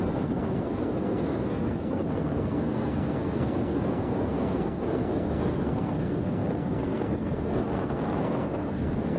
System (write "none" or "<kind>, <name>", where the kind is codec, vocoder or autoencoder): codec, SNAC